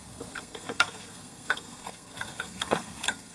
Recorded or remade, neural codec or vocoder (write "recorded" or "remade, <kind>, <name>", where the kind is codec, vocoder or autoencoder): remade, codec, SNAC